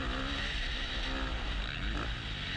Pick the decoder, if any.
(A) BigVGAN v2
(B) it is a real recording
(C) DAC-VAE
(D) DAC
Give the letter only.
B